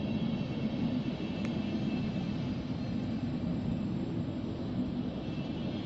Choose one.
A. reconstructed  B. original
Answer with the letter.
B